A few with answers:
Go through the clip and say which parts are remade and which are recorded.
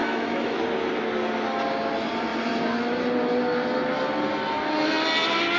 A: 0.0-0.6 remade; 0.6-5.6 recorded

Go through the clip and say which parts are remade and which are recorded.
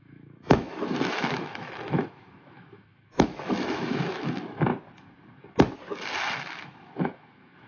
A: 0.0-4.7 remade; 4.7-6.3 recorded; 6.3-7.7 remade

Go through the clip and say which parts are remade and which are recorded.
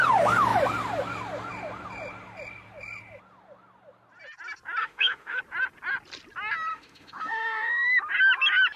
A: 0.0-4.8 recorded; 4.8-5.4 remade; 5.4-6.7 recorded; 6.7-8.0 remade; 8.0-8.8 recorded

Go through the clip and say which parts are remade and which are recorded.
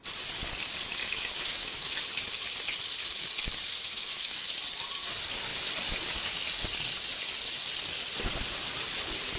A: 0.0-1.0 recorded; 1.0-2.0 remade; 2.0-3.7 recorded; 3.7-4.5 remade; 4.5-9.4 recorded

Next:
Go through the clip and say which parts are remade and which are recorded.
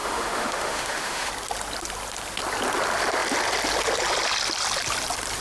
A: 0.0-1.3 remade; 1.3-5.4 recorded